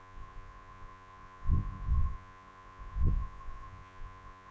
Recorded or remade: remade